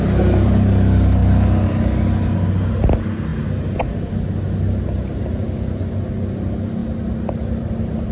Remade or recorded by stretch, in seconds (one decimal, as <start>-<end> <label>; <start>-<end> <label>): 0.0-8.1 recorded

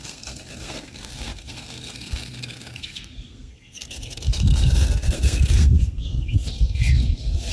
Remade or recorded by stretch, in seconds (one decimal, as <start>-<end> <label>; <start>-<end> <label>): 0.0-7.5 remade

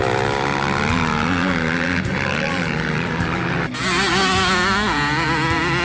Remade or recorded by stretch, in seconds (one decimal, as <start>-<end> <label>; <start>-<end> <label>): 0.0-5.8 recorded

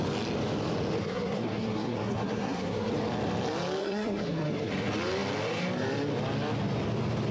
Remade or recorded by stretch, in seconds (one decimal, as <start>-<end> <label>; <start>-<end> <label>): 0.0-1.0 recorded; 1.0-2.9 remade; 2.9-3.8 recorded; 3.8-4.7 remade; 4.7-7.3 recorded

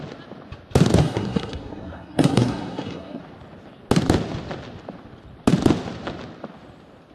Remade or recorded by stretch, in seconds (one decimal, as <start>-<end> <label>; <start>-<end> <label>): 0.0-1.0 recorded; 1.0-3.2 remade; 3.2-7.1 recorded